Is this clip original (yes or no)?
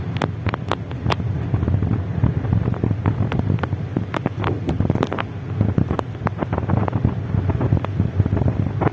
yes